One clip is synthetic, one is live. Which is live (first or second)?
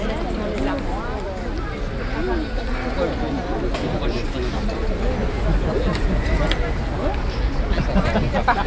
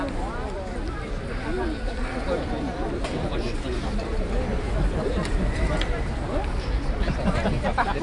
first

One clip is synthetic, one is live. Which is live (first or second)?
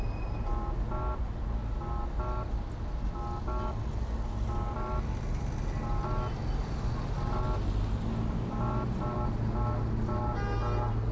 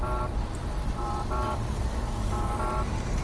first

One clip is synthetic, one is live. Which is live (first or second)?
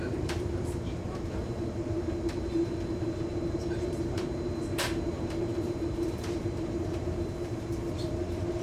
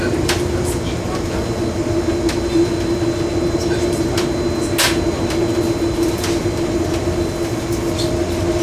second